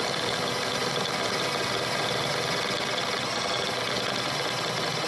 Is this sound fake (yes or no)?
no